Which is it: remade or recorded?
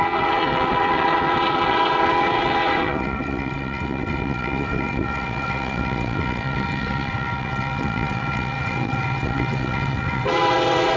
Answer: remade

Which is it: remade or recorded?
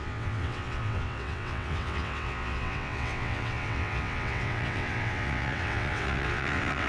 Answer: remade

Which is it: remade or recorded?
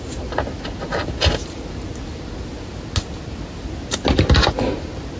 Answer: recorded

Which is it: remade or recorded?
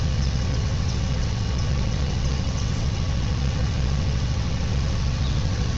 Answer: remade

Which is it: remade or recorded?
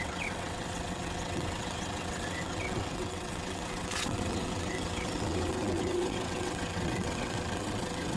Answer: remade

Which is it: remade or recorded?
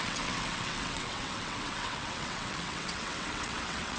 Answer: remade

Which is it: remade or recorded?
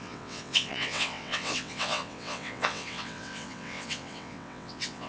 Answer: remade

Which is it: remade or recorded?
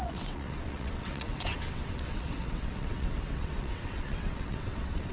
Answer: remade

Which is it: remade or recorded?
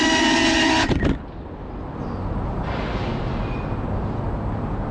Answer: recorded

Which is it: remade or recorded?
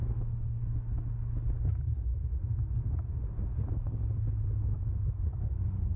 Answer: recorded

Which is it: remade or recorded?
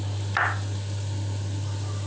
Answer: recorded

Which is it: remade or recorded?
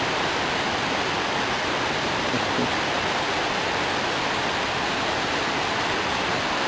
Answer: recorded